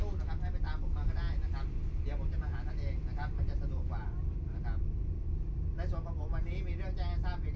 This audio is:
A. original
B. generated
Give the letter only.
A